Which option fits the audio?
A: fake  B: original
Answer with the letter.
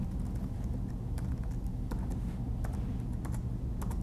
B